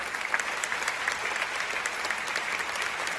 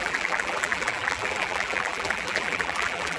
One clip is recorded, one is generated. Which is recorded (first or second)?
first